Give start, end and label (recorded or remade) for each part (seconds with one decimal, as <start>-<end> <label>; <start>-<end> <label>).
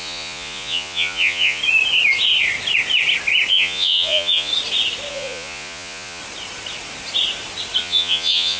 0.0-1.6 remade; 1.6-3.5 recorded; 3.5-4.5 remade; 4.5-5.1 recorded; 5.1-6.2 remade; 6.2-7.8 recorded; 7.8-8.6 remade